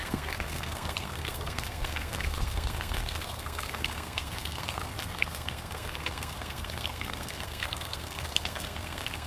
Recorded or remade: remade